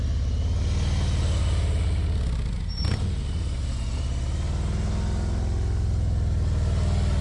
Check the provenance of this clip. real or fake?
real